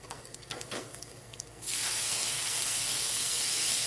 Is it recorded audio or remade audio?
remade